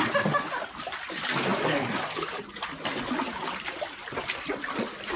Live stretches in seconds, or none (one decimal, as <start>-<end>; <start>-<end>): 0.0-5.2

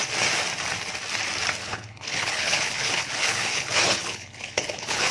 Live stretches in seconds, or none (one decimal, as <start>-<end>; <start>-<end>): 0.0-1.6

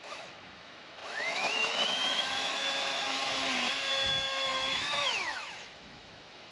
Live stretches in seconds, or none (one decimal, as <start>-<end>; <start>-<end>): 3.2-3.9